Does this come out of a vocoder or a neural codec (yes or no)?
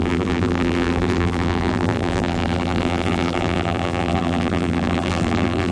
yes